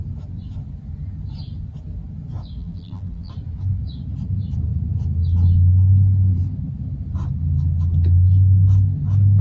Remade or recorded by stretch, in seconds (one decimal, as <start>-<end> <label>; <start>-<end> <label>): 0.0-2.6 recorded; 2.6-3.3 remade; 3.3-9.4 recorded

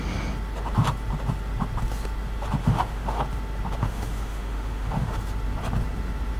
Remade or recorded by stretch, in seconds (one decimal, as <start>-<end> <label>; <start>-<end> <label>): 0.0-2.6 recorded; 2.6-3.2 remade; 3.2-3.8 recorded; 3.8-5.2 remade; 5.2-6.4 recorded

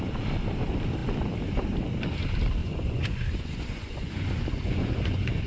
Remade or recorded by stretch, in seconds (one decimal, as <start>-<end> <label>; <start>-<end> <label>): 0.0-2.6 recorded; 2.6-5.5 remade

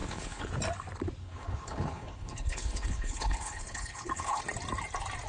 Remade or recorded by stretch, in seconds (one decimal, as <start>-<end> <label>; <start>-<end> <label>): 0.0-0.5 remade; 0.5-1.2 recorded; 1.2-4.4 remade; 4.4-5.3 recorded

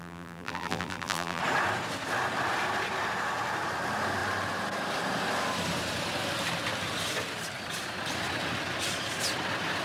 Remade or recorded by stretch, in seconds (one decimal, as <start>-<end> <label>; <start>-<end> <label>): 0.0-1.4 remade; 1.4-9.8 recorded

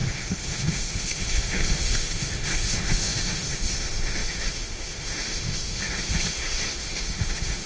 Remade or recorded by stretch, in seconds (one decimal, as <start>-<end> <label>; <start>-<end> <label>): 0.0-7.7 remade

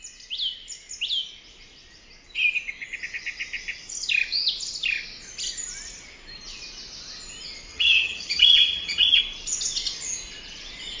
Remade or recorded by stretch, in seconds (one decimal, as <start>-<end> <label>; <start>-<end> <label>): 0.0-7.7 recorded; 7.7-9.2 remade; 9.2-11.0 recorded